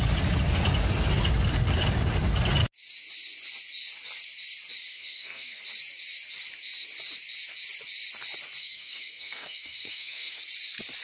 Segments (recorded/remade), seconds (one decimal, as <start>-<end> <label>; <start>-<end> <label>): 0.0-4.9 recorded; 4.9-5.6 remade; 5.6-8.6 recorded; 8.6-10.4 remade; 10.4-11.0 recorded